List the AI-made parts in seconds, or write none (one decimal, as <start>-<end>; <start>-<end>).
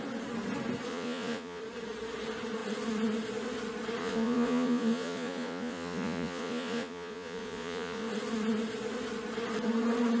0.9-1.6; 4.0-8.1